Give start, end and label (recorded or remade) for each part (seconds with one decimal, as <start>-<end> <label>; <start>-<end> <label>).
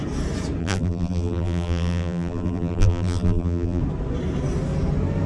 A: 0.0-0.6 recorded; 0.6-3.8 remade; 3.8-5.3 recorded